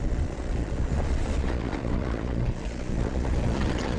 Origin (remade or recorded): remade